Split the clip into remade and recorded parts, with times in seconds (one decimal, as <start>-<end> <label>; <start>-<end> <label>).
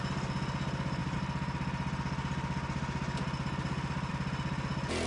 0.0-5.1 recorded